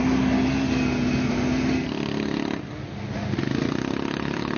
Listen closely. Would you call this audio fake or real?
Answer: real